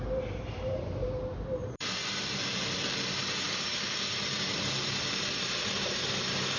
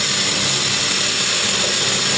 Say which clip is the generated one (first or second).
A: first